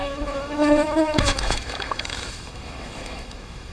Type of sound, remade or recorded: remade